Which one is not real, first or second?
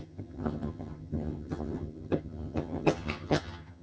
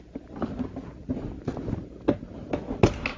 first